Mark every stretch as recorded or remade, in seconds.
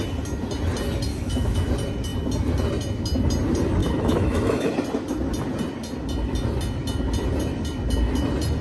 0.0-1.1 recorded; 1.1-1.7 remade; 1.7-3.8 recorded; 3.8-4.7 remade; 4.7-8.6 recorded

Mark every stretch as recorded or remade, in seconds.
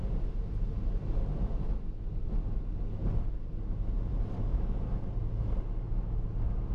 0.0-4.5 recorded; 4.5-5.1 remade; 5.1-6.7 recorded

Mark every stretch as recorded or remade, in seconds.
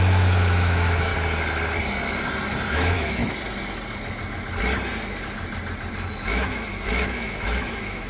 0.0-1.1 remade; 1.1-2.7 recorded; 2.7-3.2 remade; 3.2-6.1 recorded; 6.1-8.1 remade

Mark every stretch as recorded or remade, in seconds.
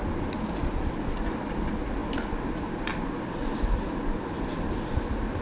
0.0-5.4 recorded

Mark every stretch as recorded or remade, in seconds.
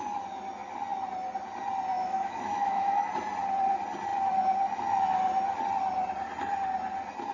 0.0-1.9 recorded; 1.9-3.1 remade; 3.1-7.3 recorded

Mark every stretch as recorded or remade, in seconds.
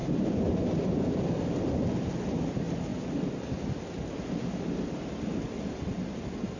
0.0-6.6 recorded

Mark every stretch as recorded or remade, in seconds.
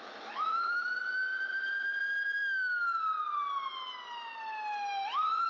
0.0-1.0 remade; 1.0-5.5 recorded